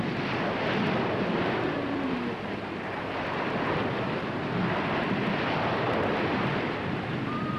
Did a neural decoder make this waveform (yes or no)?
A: no